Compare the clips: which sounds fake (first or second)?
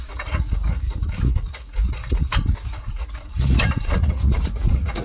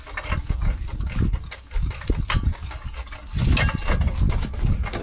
first